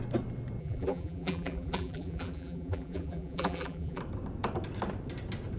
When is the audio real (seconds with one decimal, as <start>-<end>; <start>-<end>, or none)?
0.0-0.6; 4.0-5.6